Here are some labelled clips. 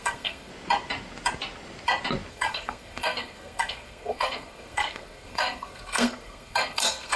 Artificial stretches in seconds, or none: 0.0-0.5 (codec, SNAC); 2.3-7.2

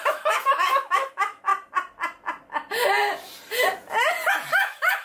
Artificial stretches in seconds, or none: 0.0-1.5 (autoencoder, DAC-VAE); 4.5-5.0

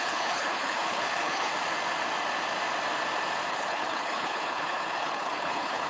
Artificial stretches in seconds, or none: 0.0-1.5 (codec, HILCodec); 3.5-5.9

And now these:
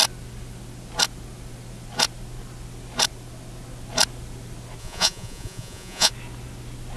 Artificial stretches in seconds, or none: 4.8-6.1 (vocoder, Vocos)